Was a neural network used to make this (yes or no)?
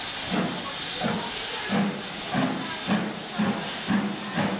no